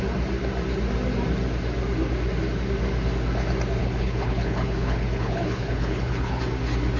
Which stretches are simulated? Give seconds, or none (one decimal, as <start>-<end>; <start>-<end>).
3.8-6.4